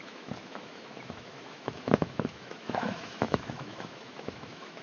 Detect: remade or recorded remade